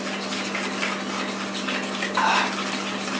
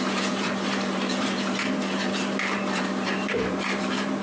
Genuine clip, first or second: first